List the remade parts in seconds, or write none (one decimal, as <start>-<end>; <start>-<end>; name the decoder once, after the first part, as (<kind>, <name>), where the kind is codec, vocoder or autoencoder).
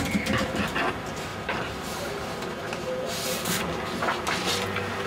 none